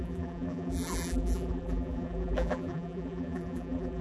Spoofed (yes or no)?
yes